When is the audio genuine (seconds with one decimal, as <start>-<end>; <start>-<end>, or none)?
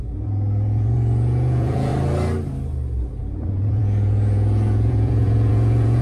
1.9-3.2